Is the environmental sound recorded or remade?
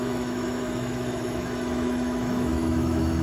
remade